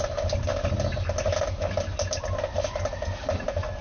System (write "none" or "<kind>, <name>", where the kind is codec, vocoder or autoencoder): none